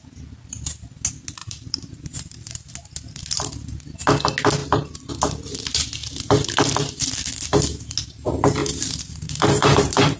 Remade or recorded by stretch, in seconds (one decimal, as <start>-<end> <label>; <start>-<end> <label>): 0.0-1.4 recorded; 1.4-2.7 remade; 2.7-4.6 recorded; 4.6-5.1 remade; 5.1-8.6 recorded; 8.6-10.2 remade